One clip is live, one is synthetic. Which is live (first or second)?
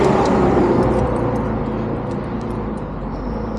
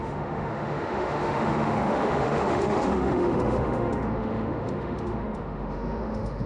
first